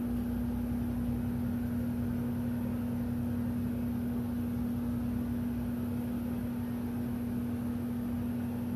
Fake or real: real